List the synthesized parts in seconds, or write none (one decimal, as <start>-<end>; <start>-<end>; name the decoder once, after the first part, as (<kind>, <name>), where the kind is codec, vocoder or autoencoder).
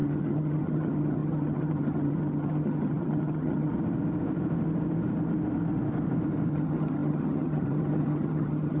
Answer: 0.0-3.7 (vocoder, HiFi-GAN); 6.5-8.8